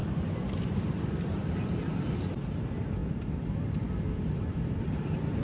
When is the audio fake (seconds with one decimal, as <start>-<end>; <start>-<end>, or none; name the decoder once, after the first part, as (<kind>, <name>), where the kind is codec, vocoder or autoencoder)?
0.0-5.4 (vocoder, BigVGAN v2)